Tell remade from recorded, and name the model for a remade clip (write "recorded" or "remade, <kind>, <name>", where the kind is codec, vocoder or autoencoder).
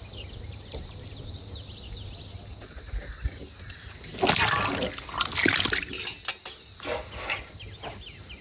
recorded